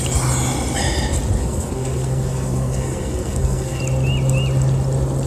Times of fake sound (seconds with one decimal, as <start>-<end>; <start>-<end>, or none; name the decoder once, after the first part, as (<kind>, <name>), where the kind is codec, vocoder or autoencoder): 1.4-3.8 (codec, SNAC)